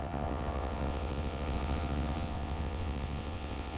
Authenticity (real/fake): fake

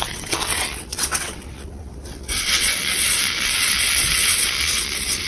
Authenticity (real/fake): fake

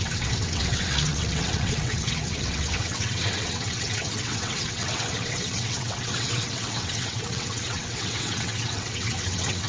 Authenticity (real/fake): fake